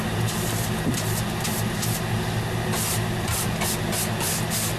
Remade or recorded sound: recorded